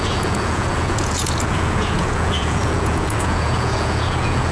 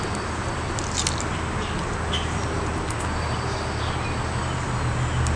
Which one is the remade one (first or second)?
first